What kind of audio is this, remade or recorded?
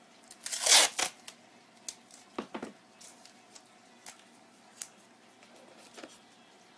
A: recorded